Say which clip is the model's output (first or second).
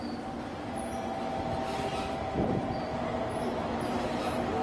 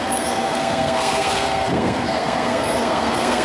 second